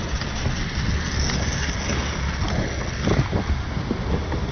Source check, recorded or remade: recorded